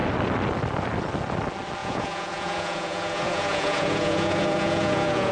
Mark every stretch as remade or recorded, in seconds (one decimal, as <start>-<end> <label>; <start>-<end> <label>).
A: 0.0-1.8 recorded; 1.8-5.3 remade